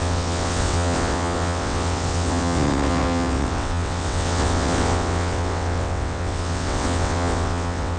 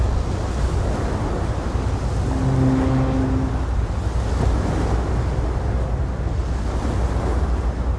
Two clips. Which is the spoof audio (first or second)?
first